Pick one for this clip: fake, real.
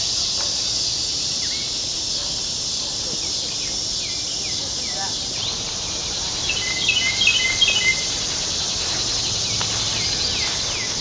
real